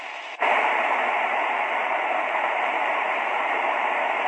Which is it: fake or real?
fake